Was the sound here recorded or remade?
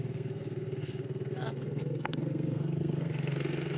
remade